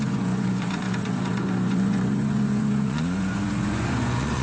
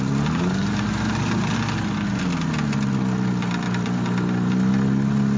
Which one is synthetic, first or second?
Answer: first